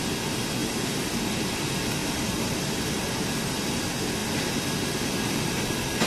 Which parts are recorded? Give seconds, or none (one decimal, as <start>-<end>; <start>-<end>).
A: 0.0-0.6; 1.2-2.0; 3.0-6.1